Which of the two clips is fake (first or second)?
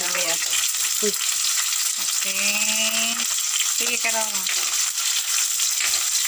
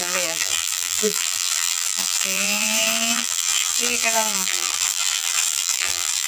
second